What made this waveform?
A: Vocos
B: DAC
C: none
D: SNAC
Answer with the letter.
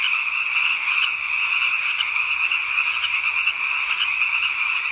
A